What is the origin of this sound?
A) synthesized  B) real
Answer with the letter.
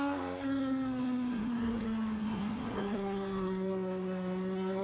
A